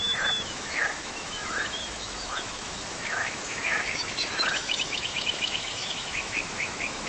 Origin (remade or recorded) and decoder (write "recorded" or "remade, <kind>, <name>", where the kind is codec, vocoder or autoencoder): remade, autoencoder, DAC-VAE